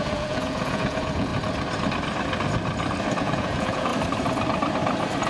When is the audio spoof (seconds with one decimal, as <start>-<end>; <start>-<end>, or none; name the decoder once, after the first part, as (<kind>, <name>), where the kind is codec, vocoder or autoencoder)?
0.0-1.3 (vocoder, Vocos); 3.2-3.9